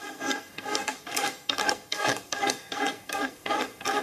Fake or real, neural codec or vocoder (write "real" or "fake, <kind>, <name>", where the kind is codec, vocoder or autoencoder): fake, codec, SNAC